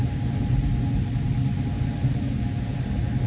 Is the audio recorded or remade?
recorded